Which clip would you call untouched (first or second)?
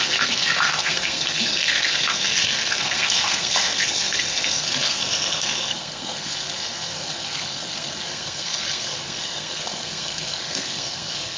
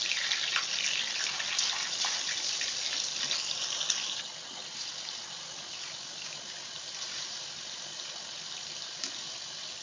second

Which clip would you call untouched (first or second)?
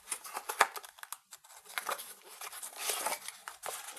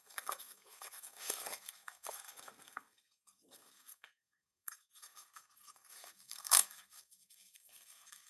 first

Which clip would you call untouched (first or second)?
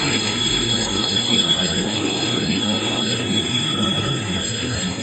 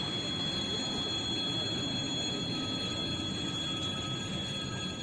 second